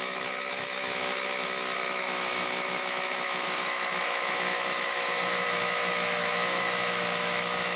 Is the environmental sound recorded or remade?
remade